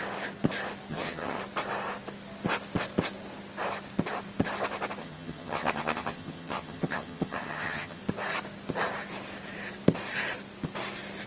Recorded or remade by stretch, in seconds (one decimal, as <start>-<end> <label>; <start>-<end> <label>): 0.0-0.9 recorded; 0.9-1.4 remade; 1.4-5.0 recorded; 5.0-8.0 remade; 8.0-11.3 recorded